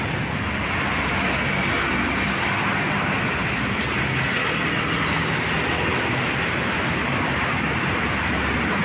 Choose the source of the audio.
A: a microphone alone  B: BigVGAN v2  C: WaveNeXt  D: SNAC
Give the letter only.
A